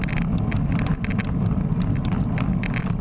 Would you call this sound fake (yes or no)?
no